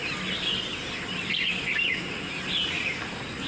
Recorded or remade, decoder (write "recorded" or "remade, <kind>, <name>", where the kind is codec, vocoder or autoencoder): recorded